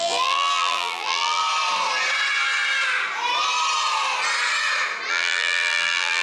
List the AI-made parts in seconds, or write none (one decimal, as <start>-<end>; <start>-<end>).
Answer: 0.0-1.4; 5.1-6.2